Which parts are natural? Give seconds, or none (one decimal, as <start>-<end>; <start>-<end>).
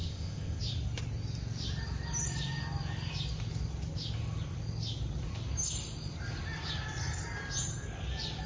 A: 0.6-8.5